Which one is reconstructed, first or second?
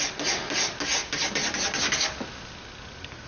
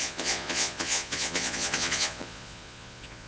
second